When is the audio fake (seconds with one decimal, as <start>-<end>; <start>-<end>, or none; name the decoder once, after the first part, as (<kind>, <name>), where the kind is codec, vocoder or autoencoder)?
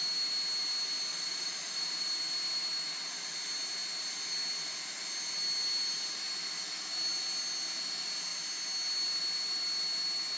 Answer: 1.1-2.1 (vocoder, BigVGAN v2)